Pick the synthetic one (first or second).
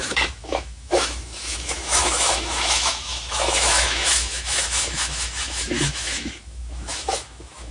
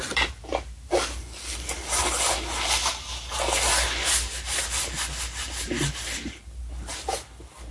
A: first